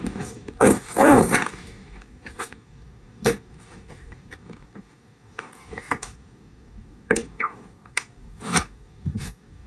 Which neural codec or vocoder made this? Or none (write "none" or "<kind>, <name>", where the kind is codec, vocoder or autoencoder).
codec, DAC